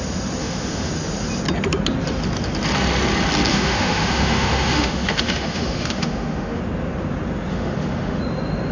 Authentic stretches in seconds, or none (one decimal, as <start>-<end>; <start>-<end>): 0.0-0.4; 0.9-3.5; 6.6-7.5; 8.2-8.7